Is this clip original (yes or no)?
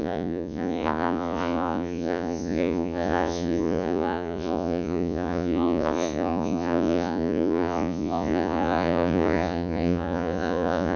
no